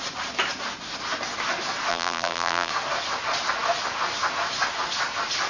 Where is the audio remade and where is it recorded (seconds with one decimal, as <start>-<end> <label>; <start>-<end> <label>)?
0.0-1.9 recorded; 1.9-2.7 remade; 2.7-5.5 recorded